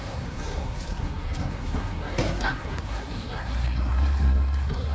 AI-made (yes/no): yes